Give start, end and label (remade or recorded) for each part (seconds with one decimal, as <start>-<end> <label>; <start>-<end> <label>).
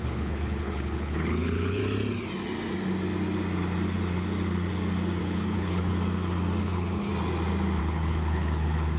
0.0-1.8 remade; 1.8-5.2 recorded; 5.2-5.9 remade; 5.9-6.6 recorded; 6.6-7.1 remade; 7.1-7.8 recorded; 7.8-9.0 remade